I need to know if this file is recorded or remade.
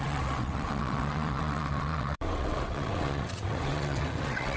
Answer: remade